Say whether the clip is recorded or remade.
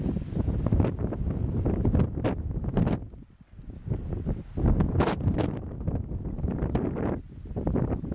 recorded